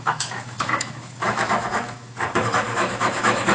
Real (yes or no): no